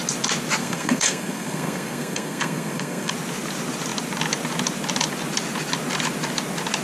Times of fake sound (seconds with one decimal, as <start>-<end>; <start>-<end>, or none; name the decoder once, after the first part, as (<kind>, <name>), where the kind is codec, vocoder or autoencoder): 0.6-3.1 (codec, SNAC)